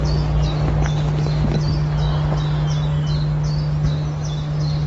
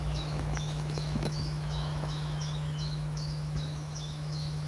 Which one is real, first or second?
first